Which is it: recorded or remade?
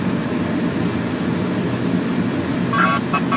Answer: recorded